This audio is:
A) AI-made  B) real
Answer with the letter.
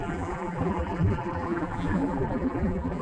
A